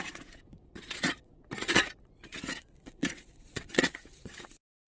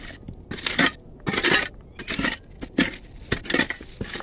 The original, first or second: second